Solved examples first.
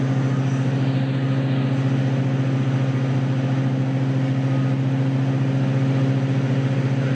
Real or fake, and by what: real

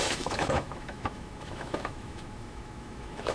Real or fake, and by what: fake, autoencoder, DAC-VAE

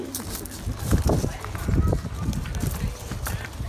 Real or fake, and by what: real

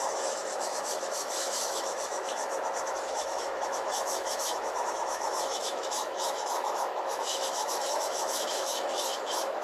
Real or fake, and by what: fake, autoencoder, DAC-VAE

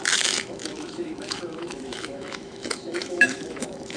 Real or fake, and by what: fake, autoencoder, DAC-VAE